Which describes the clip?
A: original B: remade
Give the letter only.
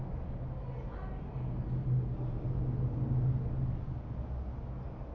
A